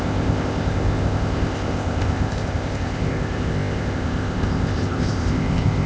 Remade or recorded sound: remade